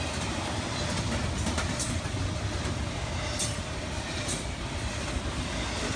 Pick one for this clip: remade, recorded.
recorded